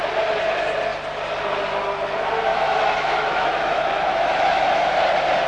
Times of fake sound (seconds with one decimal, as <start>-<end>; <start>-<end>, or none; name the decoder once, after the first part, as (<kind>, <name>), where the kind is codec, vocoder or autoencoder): 2.5-5.0 (autoencoder, DAC-VAE)

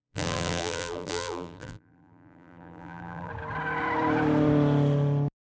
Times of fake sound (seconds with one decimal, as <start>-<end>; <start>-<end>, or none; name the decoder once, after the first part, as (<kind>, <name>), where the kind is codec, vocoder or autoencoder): 0.0-3.3 (vocoder, BigVGAN v2)

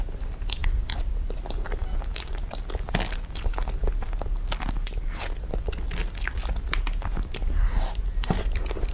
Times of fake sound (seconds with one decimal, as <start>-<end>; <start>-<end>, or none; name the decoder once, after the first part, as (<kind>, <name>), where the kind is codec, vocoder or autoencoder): 7.1-8.1 (vocoder, BigVGAN v2)

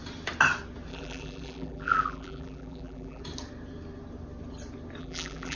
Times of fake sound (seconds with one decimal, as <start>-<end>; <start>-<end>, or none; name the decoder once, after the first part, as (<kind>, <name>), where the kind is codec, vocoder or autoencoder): 0.9-3.2 (vocoder, BigVGAN v2); 5.0-5.6

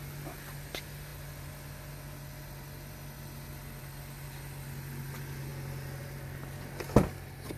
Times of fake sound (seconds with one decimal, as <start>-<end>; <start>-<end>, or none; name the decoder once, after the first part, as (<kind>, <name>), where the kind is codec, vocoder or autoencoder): none

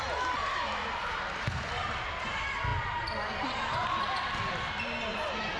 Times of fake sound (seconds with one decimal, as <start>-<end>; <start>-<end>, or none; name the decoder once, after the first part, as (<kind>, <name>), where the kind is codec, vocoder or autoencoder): 1.0-2.1 (vocoder, BigVGAN v2)